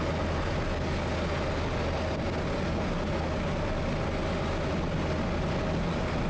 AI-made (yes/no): no